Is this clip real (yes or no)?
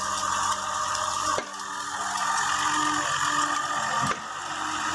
yes